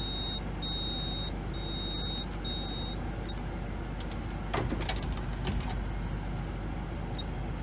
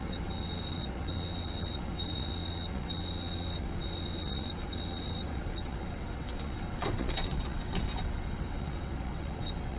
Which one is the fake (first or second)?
second